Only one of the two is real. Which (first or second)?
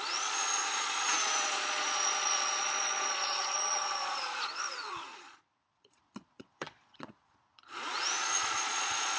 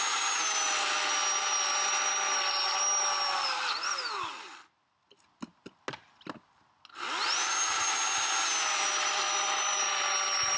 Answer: second